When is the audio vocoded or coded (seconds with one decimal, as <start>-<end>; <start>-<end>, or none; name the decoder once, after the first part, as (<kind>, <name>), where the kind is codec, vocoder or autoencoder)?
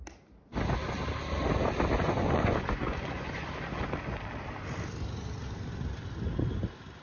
2.0-3.5 (vocoder, Vocos)